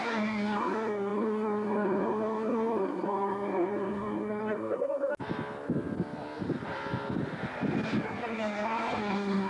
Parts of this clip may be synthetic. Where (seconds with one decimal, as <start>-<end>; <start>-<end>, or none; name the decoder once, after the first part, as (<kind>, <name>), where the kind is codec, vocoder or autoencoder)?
0.0-5.1 (codec, SNAC); 8.0-9.5